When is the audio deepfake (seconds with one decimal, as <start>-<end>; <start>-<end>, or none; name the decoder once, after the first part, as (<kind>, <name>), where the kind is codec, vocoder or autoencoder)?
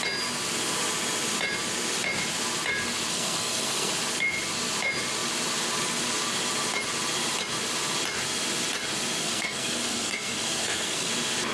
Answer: 3.1-3.9 (codec, SNAC); 9.2-11.1